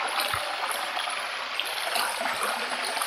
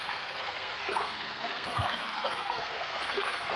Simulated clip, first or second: second